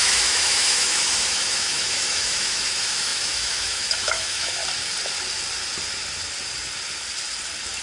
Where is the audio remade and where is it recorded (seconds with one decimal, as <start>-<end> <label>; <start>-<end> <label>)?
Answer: 0.0-4.6 remade; 4.6-7.8 recorded